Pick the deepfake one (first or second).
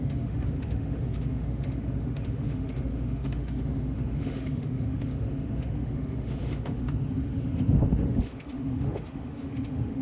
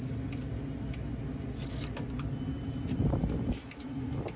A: first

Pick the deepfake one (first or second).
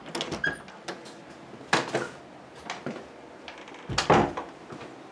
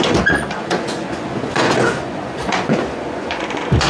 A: second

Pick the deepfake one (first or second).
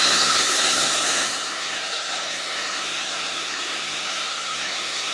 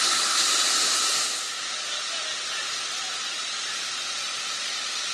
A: first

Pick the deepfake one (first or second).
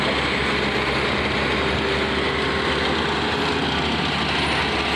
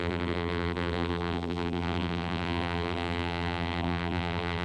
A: second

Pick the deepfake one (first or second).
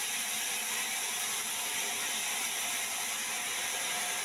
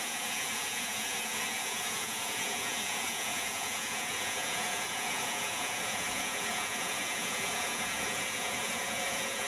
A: second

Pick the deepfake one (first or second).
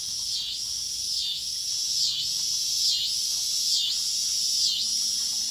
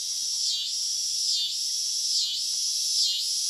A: first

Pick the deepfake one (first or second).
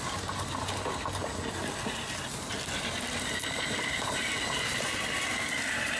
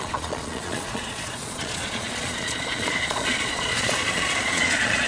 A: second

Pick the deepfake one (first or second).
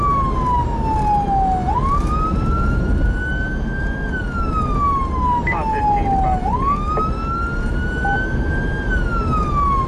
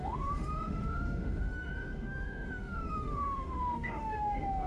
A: second